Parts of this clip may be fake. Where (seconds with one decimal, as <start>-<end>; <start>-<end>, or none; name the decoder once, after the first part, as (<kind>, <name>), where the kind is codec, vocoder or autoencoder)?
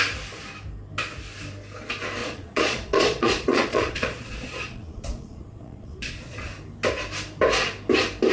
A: 2.2-6.5 (vocoder, Vocos)